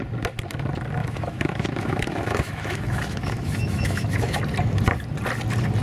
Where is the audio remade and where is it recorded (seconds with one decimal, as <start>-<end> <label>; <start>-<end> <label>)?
0.0-1.0 recorded; 1.0-4.4 remade; 4.4-5.8 recorded